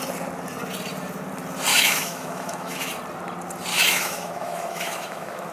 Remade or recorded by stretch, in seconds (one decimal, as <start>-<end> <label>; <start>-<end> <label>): 0.0-1.7 recorded; 1.7-2.9 remade; 2.9-3.7 recorded; 3.7-5.5 remade